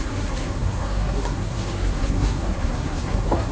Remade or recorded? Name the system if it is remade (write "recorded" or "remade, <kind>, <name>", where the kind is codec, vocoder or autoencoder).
remade, codec, SNAC